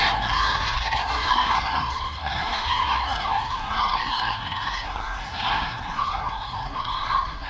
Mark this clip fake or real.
fake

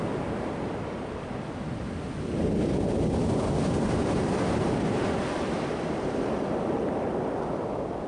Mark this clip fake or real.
real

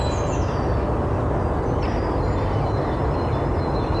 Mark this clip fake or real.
real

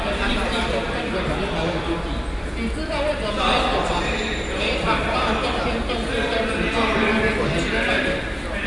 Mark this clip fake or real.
real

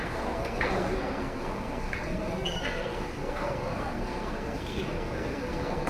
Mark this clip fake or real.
fake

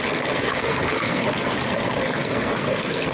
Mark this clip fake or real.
fake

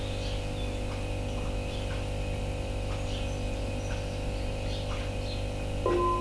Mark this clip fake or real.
real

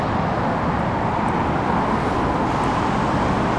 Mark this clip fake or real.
real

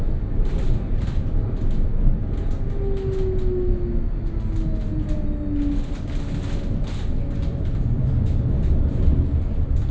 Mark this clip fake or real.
real